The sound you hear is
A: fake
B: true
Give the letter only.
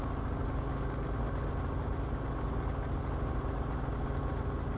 B